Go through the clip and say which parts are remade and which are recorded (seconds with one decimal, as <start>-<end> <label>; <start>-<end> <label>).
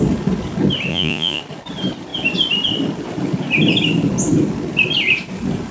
0.0-0.9 recorded; 0.9-1.4 remade; 1.4-5.7 recorded